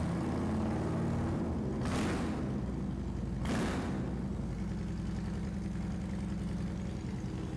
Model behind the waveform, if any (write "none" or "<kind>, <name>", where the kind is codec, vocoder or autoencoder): none